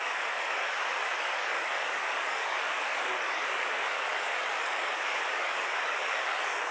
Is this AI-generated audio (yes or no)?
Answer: yes